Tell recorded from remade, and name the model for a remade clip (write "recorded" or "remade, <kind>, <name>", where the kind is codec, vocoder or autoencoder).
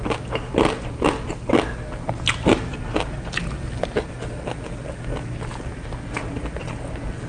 recorded